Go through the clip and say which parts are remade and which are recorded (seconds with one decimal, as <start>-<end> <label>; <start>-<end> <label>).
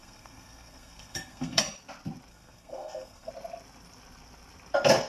0.0-1.6 remade; 1.6-2.3 recorded; 2.3-3.3 remade; 3.3-5.1 recorded